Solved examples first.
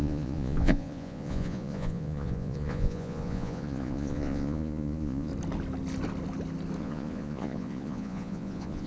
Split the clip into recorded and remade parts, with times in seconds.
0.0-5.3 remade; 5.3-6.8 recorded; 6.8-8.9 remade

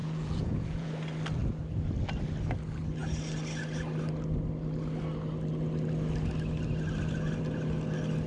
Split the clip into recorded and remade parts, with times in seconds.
0.0-0.9 remade; 0.9-8.3 recorded

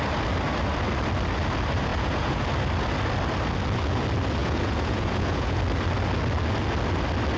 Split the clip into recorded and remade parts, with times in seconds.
0.0-1.9 recorded; 1.9-2.4 remade; 2.4-4.4 recorded; 4.4-5.6 remade; 5.6-7.4 recorded

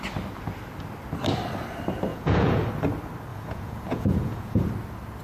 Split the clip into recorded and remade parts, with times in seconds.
0.0-2.1 recorded; 2.1-2.7 remade; 2.7-3.3 recorded; 3.3-4.7 remade; 4.7-5.2 recorded

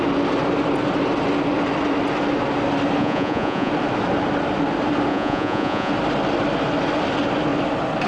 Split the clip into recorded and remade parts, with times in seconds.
0.0-3.0 recorded; 3.0-3.7 remade; 3.7-5.1 recorded; 5.1-5.9 remade; 5.9-8.1 recorded